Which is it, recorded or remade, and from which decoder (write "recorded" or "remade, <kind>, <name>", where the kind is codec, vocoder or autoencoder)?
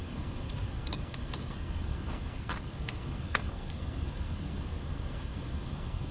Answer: remade, codec, SNAC